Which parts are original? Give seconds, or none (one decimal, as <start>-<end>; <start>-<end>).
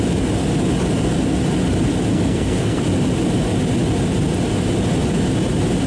0.0-2.1; 2.8-5.9